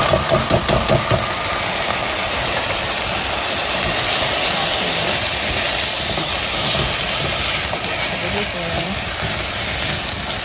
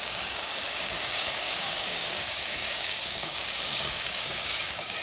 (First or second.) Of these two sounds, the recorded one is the first